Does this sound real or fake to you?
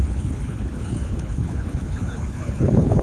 fake